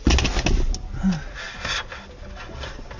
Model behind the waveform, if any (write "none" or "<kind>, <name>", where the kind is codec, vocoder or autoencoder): none